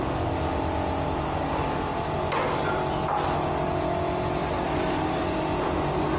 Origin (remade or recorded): recorded